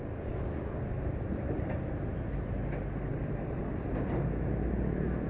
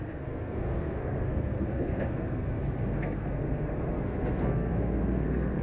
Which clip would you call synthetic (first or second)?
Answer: second